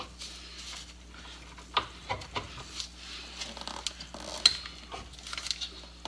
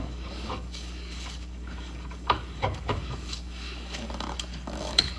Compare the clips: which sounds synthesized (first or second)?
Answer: second